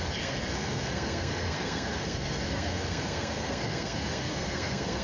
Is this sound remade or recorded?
remade